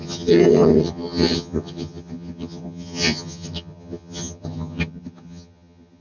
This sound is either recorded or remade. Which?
remade